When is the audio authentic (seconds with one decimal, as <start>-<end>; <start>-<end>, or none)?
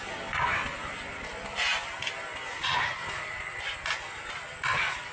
none